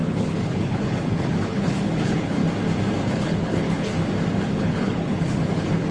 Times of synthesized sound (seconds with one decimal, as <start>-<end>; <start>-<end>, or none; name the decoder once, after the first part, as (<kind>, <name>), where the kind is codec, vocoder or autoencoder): 0.0-2.4 (codec, HILCodec); 3.1-3.9; 4.5-5.9